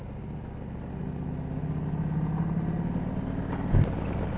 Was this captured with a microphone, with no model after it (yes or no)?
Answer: yes